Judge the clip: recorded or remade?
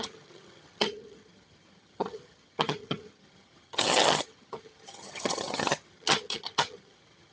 remade